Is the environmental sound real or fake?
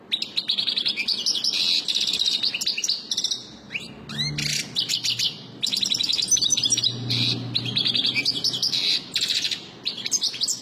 real